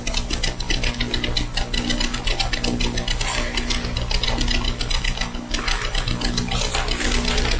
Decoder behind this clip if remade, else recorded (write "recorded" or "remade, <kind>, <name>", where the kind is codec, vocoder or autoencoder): recorded